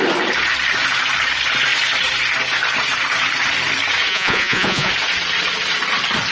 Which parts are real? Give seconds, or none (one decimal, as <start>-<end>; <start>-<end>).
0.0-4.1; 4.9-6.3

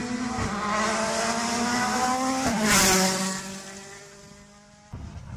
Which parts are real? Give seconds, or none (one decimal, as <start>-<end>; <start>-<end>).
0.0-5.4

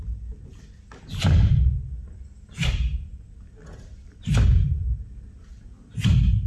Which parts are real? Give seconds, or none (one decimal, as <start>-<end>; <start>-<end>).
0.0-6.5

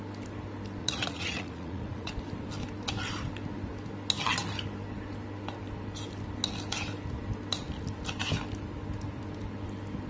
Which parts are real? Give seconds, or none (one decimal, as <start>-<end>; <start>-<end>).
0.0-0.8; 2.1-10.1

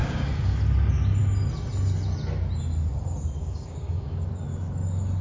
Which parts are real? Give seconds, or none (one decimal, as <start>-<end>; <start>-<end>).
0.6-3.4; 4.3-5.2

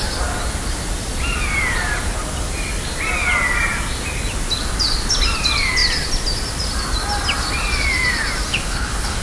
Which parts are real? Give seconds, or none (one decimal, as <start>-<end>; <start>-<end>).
0.0-8.5

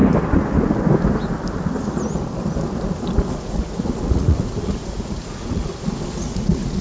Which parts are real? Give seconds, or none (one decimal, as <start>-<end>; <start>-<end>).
0.0-3.3; 5.7-6.2